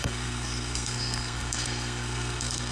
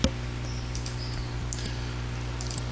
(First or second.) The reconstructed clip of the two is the first